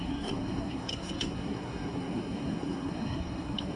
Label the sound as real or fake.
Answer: fake